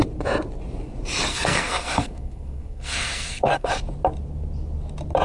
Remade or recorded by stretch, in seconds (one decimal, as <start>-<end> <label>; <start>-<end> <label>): 0.0-1.3 recorded; 1.3-3.7 remade; 3.7-5.2 recorded